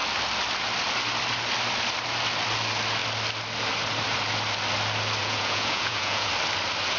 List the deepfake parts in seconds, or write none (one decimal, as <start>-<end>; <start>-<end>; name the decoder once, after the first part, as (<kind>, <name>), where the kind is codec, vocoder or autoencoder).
5.2-6.3 (vocoder, Vocos)